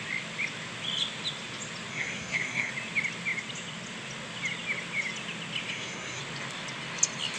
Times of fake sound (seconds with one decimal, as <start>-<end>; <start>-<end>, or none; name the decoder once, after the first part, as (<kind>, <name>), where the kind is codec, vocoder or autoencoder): 1.9-2.7 (codec, SNAC); 5.7-6.2